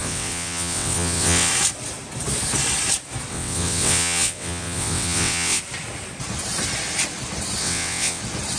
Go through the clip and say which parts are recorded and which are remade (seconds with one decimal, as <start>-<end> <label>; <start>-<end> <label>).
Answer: 0.0-1.5 remade; 1.5-3.3 recorded; 3.3-5.6 remade; 5.6-7.6 recorded; 7.6-8.2 remade; 8.2-8.6 recorded